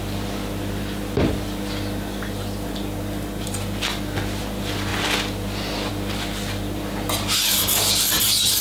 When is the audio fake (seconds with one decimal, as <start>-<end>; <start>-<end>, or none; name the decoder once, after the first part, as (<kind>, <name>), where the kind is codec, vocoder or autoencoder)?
none